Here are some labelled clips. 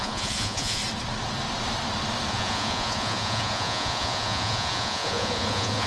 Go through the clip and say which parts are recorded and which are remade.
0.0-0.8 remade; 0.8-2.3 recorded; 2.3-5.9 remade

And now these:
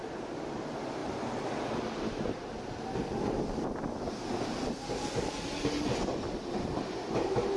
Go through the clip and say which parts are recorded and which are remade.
0.0-7.6 recorded

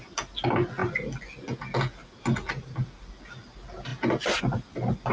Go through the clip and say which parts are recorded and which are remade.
0.0-5.1 recorded

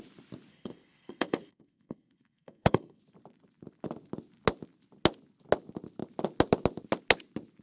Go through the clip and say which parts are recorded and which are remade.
0.0-0.5 recorded; 0.5-3.0 remade; 3.0-7.6 recorded

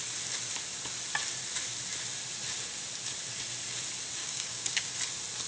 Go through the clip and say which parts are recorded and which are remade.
0.0-4.2 recorded; 4.2-4.9 remade; 4.9-5.5 recorded

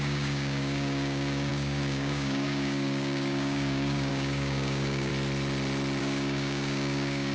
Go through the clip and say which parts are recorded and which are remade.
0.0-5.1 remade; 5.1-6.0 recorded; 6.0-7.3 remade

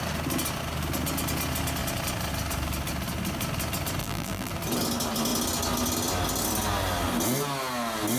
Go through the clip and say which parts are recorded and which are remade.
0.0-4.0 recorded; 4.0-4.5 remade; 4.5-8.2 recorded